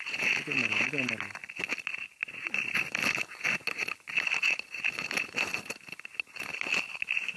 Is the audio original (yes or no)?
yes